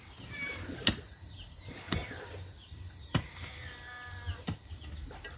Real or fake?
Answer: real